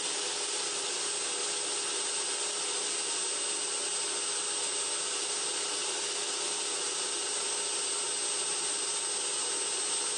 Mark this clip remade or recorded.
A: recorded